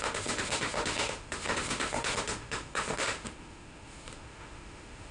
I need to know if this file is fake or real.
fake